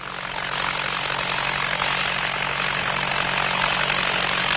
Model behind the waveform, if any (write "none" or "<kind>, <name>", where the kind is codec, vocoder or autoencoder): none